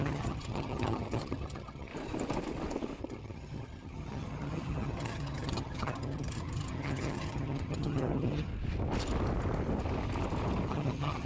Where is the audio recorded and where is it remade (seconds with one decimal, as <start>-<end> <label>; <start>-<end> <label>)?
0.0-1.9 remade; 1.9-3.0 recorded; 3.0-8.5 remade; 8.5-10.7 recorded; 10.7-11.3 remade